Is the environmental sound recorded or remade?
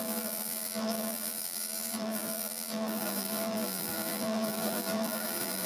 remade